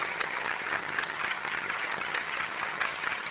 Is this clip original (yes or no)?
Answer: no